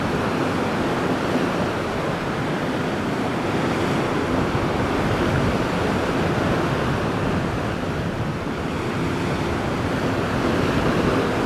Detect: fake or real real